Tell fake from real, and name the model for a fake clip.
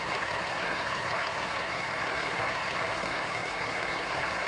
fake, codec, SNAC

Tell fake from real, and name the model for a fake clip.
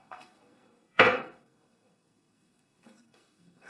fake, codec, SNAC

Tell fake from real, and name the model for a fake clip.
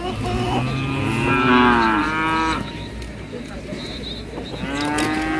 real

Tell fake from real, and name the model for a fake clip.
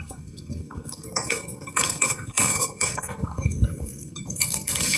fake, codec, SNAC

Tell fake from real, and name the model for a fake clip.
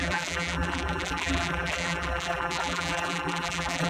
fake, vocoder, BigVGAN v2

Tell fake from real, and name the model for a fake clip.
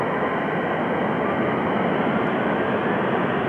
real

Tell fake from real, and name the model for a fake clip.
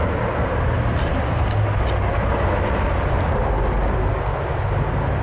real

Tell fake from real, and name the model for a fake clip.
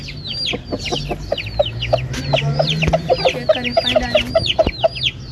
real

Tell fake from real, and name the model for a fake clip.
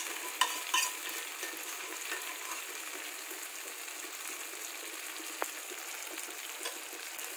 real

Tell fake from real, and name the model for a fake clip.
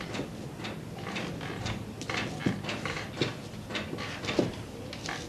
real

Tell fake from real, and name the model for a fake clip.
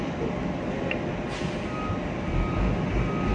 real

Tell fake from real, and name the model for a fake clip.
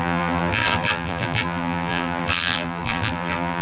fake, vocoder, BigVGAN v2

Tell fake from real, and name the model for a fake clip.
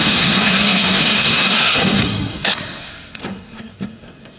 fake, codec, SNAC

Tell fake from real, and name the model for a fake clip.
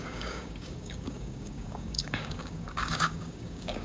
fake, codec, DAC